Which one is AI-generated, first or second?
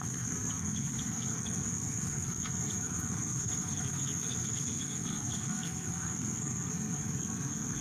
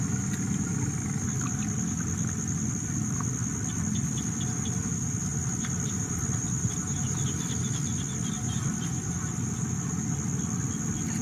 first